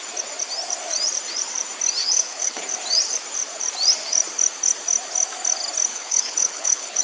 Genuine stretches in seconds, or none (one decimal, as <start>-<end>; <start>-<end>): 0.0-2.0; 2.6-5.9